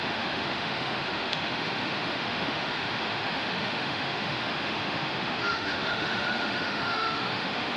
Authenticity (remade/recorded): remade